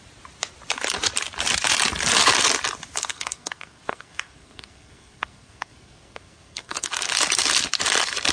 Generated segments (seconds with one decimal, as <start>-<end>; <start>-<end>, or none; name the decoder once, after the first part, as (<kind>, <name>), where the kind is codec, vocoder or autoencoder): 3.1-7.1 (codec, SNAC)